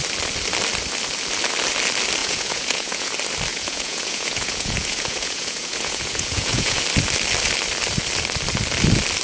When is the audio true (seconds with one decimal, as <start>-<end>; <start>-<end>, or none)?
0.0-2.2; 3.1-3.5; 6.8-9.2